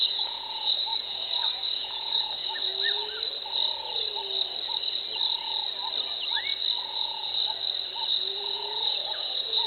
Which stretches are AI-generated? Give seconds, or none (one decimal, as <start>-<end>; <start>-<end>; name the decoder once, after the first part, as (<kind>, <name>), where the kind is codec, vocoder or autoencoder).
0.0-2.7 (vocoder, Vocos); 6.9-7.4; 8.1-9.7